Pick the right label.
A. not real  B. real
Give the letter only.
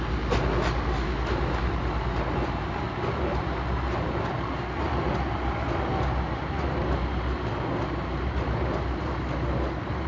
B